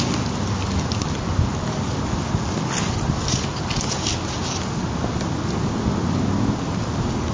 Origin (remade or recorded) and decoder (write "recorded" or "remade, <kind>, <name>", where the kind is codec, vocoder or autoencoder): recorded